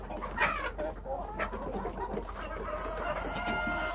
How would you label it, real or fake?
real